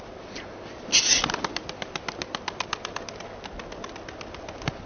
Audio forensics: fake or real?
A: real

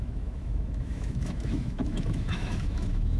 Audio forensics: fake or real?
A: fake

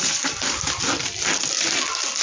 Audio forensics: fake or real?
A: real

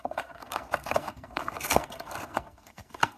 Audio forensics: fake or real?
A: fake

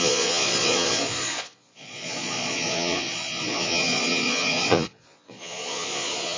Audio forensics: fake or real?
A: fake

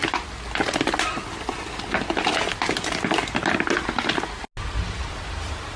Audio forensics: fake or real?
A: real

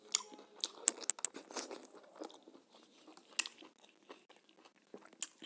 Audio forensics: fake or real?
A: real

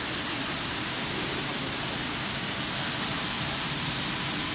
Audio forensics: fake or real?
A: real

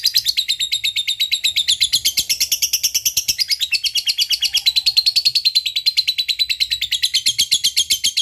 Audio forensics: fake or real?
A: real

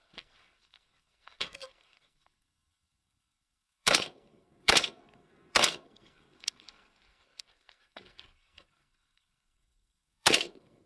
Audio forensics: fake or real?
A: fake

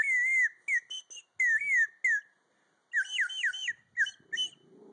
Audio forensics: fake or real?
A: real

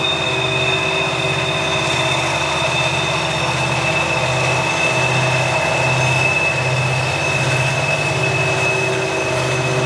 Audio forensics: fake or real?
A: real